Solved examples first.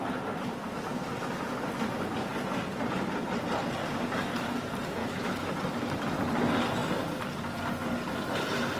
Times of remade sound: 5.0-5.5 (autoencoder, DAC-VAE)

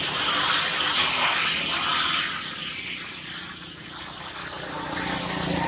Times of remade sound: none

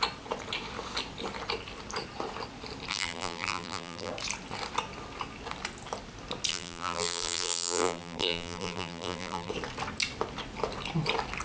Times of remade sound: 2.9-4.1 (vocoder, BigVGAN v2); 6.5-9.5

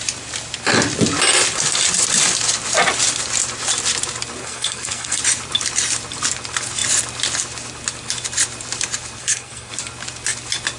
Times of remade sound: 4.4-5.2 (codec, SNAC); 9.2-9.7

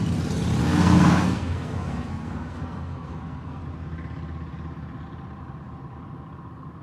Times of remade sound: 0.6-3.6 (codec, SNAC)

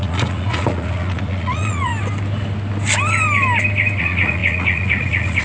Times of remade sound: 0.0-1.9 (vocoder, Vocos); 4.0-5.4